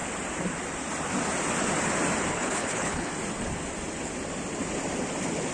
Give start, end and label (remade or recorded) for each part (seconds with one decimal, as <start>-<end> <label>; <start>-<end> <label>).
0.0-2.3 recorded; 2.3-3.1 remade; 3.1-5.5 recorded